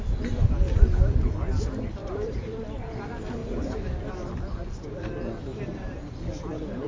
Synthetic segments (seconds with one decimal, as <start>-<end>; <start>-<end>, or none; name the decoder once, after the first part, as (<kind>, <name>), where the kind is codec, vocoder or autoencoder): 2.0-2.7 (vocoder, BigVGAN v2); 3.4-4.3; 5.5-6.2